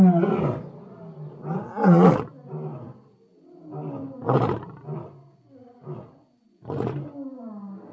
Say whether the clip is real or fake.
real